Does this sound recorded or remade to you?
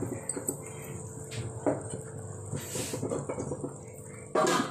recorded